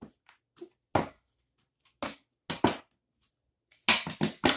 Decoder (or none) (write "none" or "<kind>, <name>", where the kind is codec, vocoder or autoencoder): none